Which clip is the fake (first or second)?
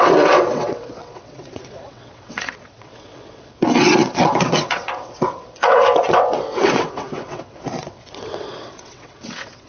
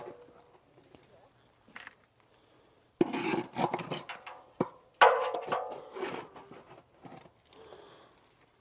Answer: first